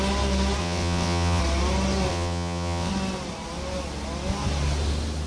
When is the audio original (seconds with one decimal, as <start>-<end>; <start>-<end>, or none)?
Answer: 0.0-0.6; 1.4-2.1; 2.9-5.3